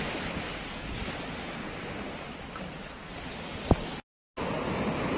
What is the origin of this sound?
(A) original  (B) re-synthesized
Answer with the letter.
A